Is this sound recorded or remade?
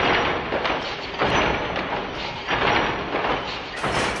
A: recorded